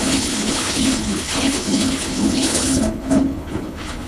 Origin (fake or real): fake